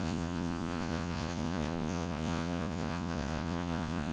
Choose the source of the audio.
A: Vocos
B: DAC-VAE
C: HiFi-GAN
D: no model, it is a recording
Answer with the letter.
A